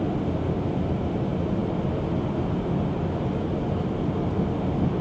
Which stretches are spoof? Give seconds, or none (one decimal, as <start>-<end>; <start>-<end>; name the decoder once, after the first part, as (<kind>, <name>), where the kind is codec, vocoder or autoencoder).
none